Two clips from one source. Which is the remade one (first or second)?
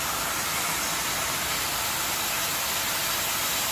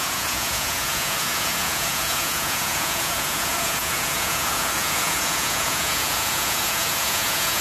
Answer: second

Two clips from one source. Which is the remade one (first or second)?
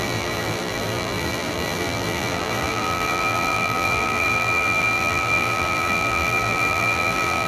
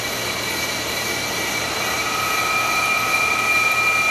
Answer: first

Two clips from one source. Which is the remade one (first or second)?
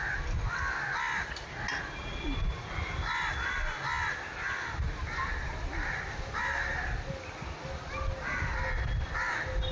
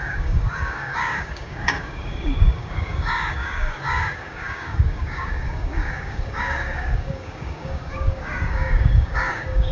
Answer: second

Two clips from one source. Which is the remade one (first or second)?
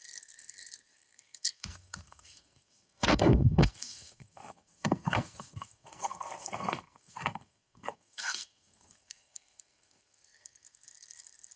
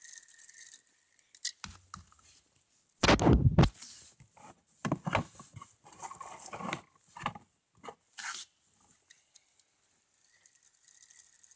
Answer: first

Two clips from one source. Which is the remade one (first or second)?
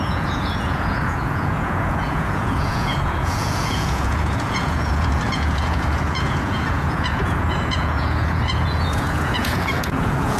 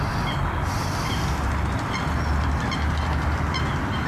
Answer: first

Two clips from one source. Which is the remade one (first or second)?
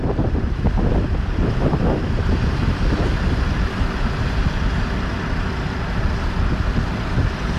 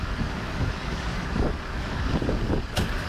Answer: second